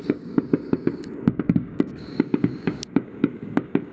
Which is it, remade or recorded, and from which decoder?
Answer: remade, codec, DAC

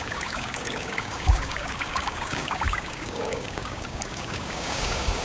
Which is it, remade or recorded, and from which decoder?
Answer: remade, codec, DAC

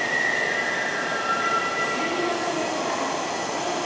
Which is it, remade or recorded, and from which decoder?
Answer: recorded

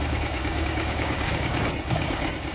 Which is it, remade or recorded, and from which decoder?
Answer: remade, codec, DAC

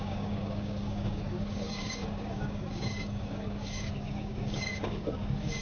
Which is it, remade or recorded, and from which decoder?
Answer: remade, codec, DAC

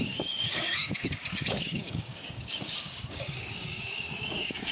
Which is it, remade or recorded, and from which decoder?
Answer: remade, codec, DAC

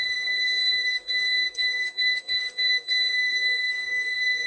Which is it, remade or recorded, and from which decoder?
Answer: remade, codec, DAC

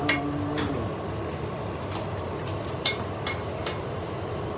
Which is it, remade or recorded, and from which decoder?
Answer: recorded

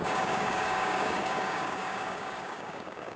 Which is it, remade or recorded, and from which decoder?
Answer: remade, codec, DAC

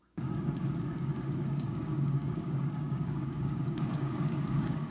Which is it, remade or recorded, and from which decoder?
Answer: remade, codec, DAC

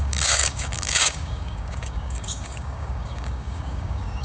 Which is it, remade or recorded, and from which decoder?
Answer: remade, codec, DAC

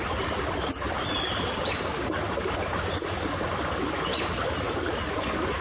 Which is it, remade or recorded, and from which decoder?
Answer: recorded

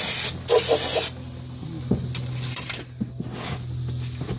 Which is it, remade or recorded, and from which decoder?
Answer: recorded